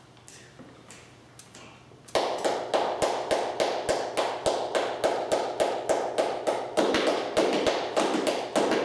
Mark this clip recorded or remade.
recorded